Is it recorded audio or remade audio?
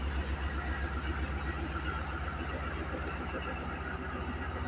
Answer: recorded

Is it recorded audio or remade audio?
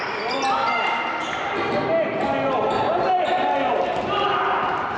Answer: recorded